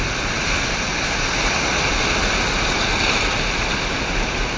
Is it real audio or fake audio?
real